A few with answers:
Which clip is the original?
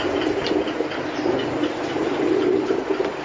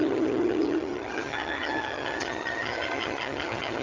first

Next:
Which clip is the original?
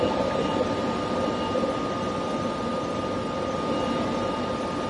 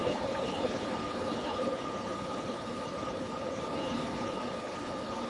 first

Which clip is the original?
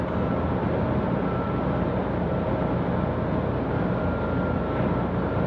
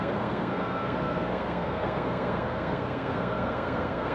first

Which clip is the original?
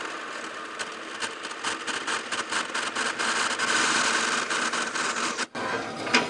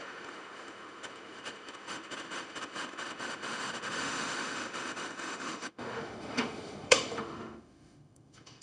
first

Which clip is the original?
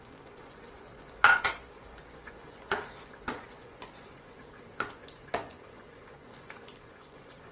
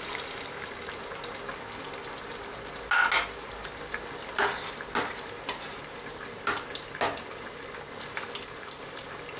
second